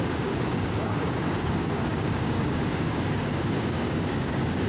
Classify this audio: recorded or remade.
remade